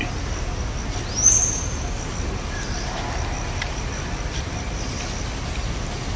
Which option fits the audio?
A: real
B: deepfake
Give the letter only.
A